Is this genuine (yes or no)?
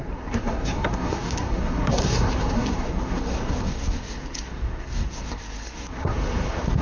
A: no